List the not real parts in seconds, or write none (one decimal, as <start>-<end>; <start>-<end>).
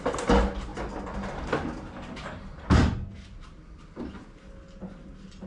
none